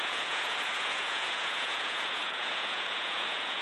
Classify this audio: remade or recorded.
remade